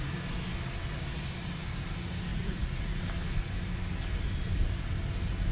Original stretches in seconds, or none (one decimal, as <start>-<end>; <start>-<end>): 0.0-2.3; 3.0-5.5